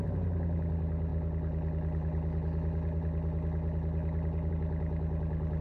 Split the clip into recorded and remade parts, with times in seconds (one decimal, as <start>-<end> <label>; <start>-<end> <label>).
0.0-5.6 recorded